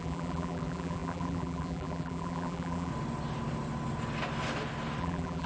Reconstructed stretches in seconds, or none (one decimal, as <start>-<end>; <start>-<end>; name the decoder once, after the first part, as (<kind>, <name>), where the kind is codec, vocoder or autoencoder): 0.0-2.9 (vocoder, BigVGAN v2); 5.0-5.5